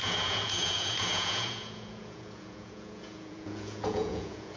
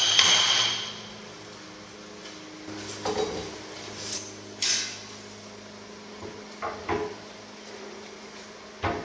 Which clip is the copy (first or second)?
first